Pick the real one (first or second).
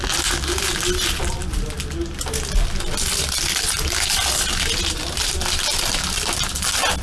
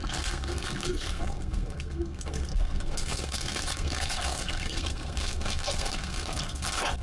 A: first